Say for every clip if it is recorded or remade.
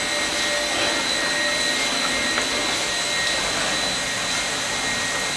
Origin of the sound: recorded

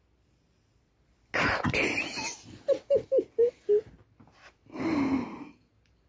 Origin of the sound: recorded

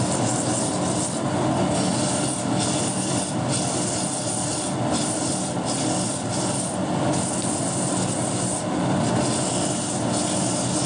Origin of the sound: recorded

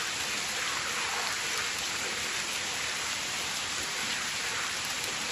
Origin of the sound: remade